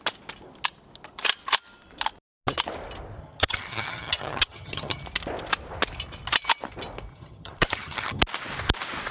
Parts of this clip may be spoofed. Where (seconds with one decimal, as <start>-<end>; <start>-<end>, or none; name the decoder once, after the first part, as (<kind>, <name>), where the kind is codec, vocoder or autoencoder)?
3.2-5.0 (vocoder, HiFi-GAN); 7.1-8.2